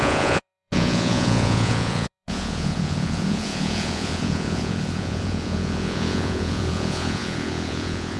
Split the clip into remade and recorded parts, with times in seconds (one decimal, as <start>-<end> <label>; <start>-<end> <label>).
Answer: 0.0-8.2 remade